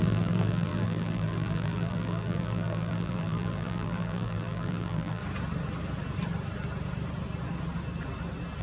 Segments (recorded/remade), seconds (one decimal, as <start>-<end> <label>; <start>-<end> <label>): 0.0-5.2 remade; 5.2-8.6 recorded